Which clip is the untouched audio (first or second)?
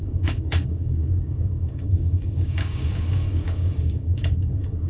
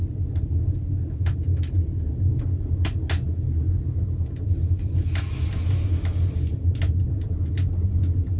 second